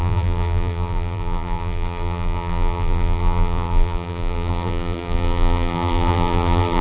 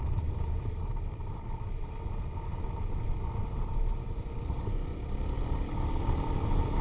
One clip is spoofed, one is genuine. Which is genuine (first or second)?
second